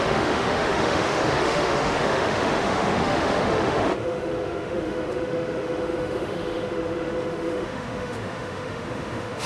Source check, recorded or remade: remade